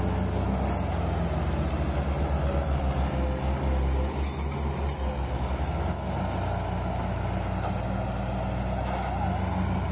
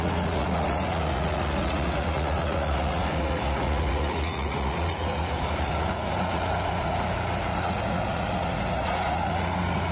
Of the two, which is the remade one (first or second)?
second